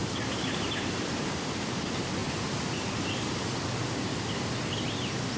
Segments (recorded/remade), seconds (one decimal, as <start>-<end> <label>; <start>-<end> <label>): 0.0-1.4 remade; 1.4-5.4 recorded